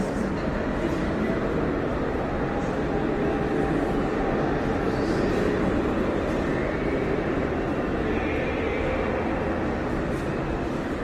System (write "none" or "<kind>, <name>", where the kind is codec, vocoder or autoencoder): none